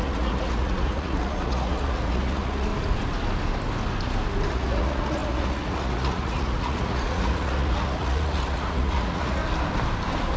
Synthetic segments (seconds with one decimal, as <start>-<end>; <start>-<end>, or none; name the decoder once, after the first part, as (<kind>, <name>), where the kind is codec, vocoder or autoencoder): 0.0-2.7 (vocoder, Vocos); 4.5-9.4